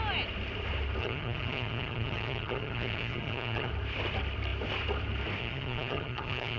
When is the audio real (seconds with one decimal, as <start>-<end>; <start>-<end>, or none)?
0.0-1.0; 3.7-5.4